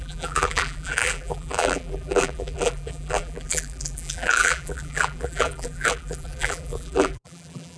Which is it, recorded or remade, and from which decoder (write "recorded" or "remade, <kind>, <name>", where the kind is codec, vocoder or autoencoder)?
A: remade, vocoder, BigVGAN v2